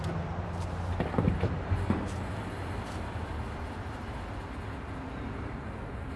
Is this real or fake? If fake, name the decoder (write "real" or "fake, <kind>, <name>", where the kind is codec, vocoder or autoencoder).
real